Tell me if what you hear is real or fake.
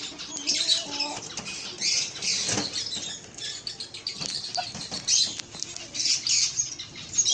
real